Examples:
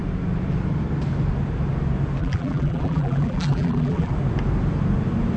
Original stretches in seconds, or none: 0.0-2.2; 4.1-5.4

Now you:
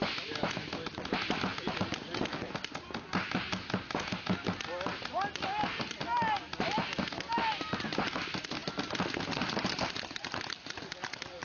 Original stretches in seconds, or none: 0.0-8.6; 10.4-11.4

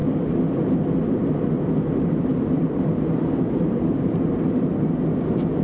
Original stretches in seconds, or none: 0.0-2.3; 4.5-5.6

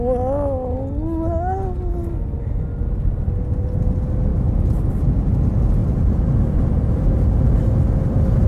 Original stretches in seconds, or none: 0.0-4.3; 4.9-5.8; 7.5-8.5

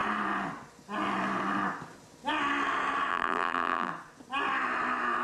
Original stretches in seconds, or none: 0.0-3.1; 3.9-5.2

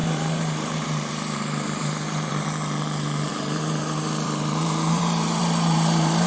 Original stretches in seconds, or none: 2.3-3.3

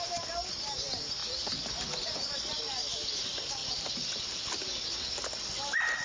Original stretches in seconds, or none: 0.0-1.2; 1.7-6.0

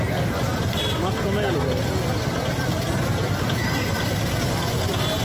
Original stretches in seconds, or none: 0.0-5.2